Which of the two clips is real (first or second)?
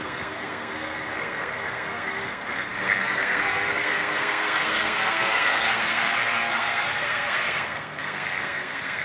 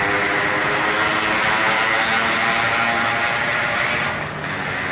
second